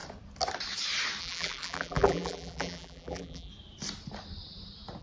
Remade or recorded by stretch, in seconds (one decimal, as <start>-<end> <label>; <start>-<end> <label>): 0.0-1.2 recorded; 1.2-3.5 remade; 3.5-5.0 recorded